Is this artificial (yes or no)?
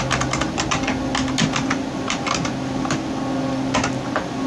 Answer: no